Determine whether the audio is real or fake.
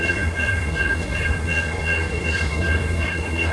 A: fake